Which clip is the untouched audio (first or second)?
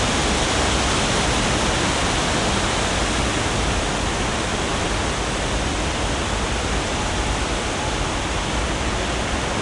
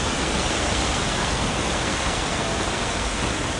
first